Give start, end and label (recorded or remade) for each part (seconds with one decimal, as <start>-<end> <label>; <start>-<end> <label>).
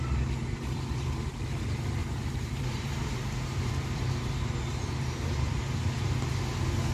0.0-2.0 recorded; 2.0-6.1 remade; 6.1-6.9 recorded